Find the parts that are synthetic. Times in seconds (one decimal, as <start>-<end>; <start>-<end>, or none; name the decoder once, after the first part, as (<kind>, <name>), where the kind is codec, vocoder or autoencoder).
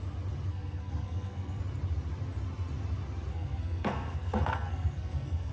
0.5-1.6 (codec, SNAC); 3.3-5.5